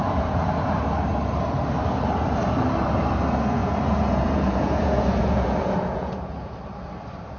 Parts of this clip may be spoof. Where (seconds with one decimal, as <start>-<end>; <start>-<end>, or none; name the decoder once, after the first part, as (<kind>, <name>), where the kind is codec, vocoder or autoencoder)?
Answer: 0.0-0.5 (vocoder, Vocos); 3.6-6.5